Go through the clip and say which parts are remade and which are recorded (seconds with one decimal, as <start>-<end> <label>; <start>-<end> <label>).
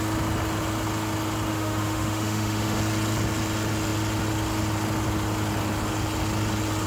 0.0-1.5 recorded; 1.5-2.8 remade; 2.8-6.9 recorded